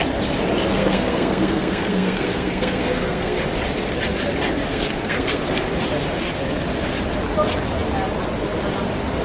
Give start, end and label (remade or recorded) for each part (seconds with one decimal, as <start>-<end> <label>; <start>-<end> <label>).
0.0-0.7 recorded; 0.7-3.4 remade; 3.4-4.7 recorded; 4.7-5.6 remade; 5.6-9.2 recorded